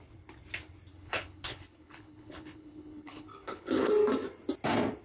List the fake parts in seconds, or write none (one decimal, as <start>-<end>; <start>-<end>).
0.9-3.9